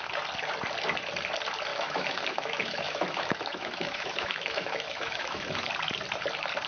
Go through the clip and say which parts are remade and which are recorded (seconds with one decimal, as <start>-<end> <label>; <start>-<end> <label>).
0.0-1.7 recorded; 1.7-5.7 remade; 5.7-6.7 recorded